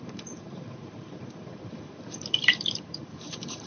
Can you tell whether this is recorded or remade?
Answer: remade